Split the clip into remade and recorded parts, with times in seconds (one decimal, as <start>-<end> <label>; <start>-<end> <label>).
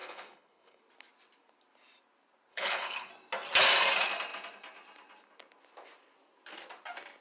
0.0-0.8 remade; 0.8-2.5 recorded; 2.5-3.1 remade; 3.1-7.2 recorded